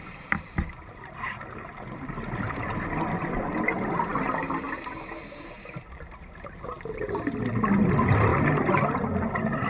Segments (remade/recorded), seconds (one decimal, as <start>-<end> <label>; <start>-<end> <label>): 0.0-9.7 recorded